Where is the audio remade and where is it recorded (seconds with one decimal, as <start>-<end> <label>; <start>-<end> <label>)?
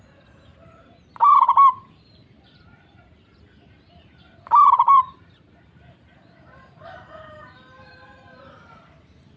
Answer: 0.0-9.4 remade